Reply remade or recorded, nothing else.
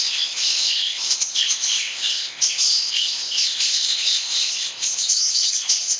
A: remade